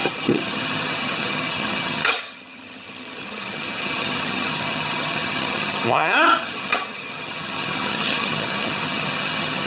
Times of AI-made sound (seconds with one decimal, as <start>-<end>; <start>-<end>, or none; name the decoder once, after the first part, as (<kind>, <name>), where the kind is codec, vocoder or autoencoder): 0.0-9.7 (vocoder, HiFi-GAN)